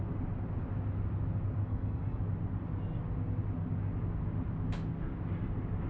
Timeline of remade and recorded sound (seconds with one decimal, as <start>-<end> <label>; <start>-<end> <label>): 0.0-1.6 recorded; 1.6-2.2 remade; 2.2-5.9 recorded